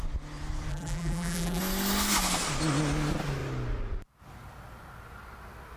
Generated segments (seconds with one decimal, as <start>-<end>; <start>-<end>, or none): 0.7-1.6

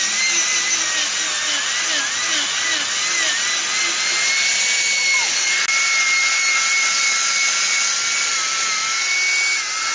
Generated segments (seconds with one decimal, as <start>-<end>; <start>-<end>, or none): none

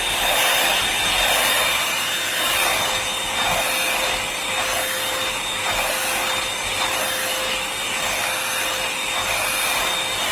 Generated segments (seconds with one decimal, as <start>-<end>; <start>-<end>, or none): none

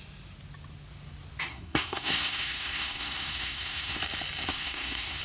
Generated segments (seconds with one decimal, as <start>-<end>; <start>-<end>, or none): 1.5-4.0; 4.5-5.2